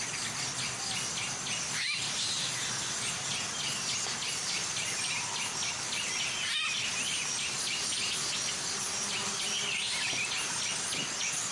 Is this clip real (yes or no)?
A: yes